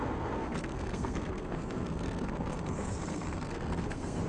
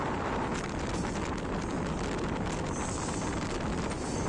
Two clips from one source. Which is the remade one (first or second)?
first